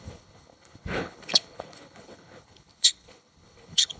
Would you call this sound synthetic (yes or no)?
yes